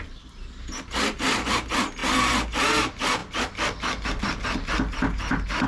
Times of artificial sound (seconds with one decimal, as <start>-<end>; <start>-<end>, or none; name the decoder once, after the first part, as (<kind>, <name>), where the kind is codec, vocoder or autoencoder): none